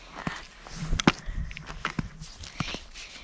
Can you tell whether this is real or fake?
real